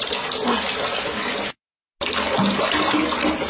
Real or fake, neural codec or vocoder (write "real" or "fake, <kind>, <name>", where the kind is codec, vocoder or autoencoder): real